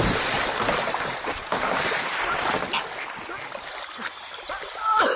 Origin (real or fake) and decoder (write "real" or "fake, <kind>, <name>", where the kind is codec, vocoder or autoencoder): real